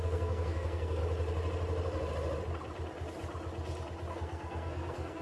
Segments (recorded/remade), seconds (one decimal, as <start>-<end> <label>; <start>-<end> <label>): 0.0-1.0 remade; 1.0-4.1 recorded; 4.1-5.2 remade